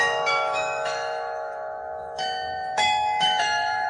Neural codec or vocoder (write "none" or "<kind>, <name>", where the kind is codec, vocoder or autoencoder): autoencoder, DAC-VAE